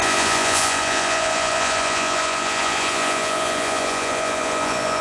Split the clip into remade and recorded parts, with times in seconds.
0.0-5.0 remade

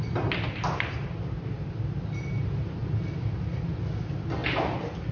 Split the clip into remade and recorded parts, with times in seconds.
0.0-5.1 recorded

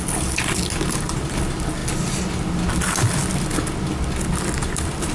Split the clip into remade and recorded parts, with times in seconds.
0.0-5.1 recorded

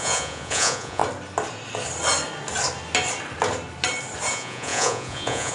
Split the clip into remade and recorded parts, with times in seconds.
0.0-1.0 remade; 1.0-4.3 recorded; 4.3-5.5 remade

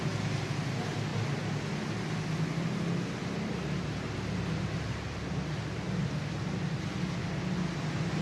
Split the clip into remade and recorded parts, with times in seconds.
0.0-8.2 recorded

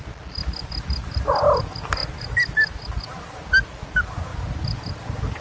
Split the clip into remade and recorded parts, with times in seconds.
0.0-5.4 recorded

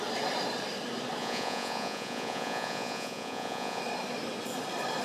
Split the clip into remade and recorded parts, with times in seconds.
0.0-1.2 recorded; 1.2-3.8 remade; 3.8-5.0 recorded